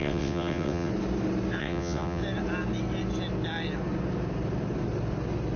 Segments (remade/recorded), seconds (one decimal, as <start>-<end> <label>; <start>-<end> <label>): 0.0-0.9 remade; 0.9-1.6 recorded; 1.6-2.2 remade; 2.2-5.6 recorded